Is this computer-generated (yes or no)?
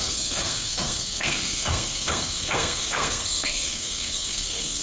yes